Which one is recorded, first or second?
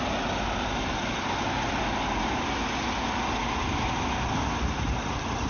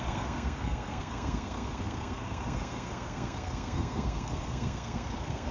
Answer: first